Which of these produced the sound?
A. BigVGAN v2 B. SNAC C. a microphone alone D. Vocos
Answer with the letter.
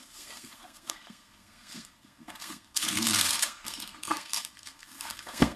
B